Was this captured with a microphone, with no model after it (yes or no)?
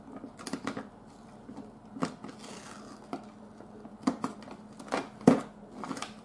yes